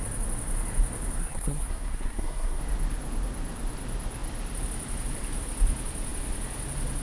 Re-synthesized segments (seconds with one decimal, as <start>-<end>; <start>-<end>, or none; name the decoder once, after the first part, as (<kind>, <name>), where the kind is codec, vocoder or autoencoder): 1.2-2.6 (codec, SNAC)